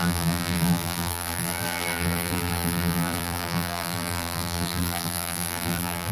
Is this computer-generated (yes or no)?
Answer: yes